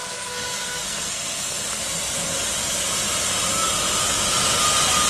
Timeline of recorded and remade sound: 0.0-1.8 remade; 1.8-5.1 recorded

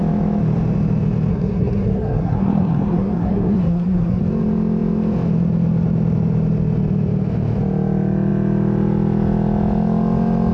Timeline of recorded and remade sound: 0.0-1.3 recorded; 1.3-4.2 remade; 4.2-10.5 recorded

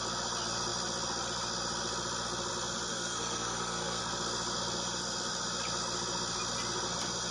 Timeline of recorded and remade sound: 0.0-2.9 recorded; 2.9-4.0 remade; 4.0-7.3 recorded

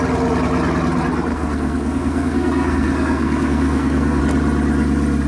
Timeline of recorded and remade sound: 0.0-1.3 recorded; 1.3-4.2 remade; 4.2-5.3 recorded

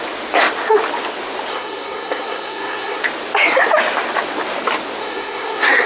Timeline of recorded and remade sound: 0.0-1.5 recorded; 1.5-3.0 remade; 3.0-5.0 recorded; 5.0-5.9 remade

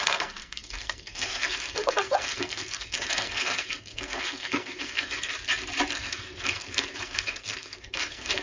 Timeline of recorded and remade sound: 0.0-5.3 remade; 5.3-5.9 recorded; 5.9-8.4 remade

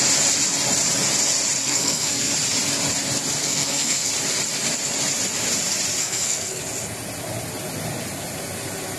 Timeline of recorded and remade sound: 0.0-1.6 recorded; 1.6-2.3 remade; 2.3-3.4 recorded; 3.4-4.1 remade; 4.1-6.0 recorded; 6.0-6.6 remade; 6.6-9.0 recorded

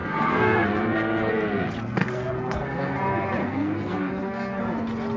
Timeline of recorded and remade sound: 0.0-1.3 remade; 1.3-2.0 recorded; 2.0-3.0 remade; 3.0-3.4 recorded; 3.4-4.6 remade; 4.6-5.2 recorded